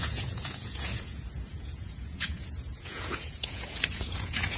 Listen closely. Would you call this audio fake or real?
fake